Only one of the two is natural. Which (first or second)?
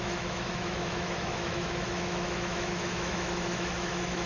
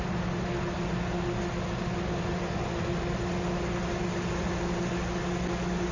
second